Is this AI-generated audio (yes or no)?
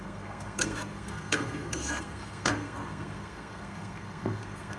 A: yes